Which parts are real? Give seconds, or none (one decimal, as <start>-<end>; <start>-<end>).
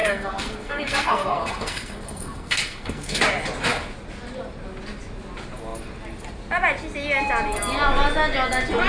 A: 3.2-8.9